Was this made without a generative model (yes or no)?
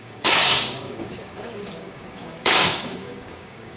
no